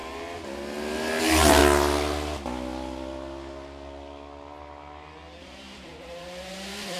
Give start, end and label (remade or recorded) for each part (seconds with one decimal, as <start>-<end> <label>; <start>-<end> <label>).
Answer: 0.0-1.2 recorded; 1.2-1.6 remade; 1.6-5.4 recorded; 5.4-7.0 remade